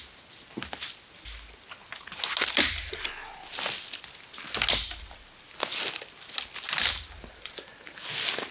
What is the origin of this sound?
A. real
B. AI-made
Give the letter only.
A